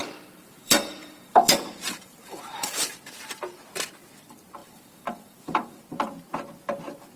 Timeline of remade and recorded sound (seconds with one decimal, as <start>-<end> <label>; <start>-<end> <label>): 0.0-2.9 remade; 2.9-4.6 recorded; 4.6-5.8 remade; 5.8-7.2 recorded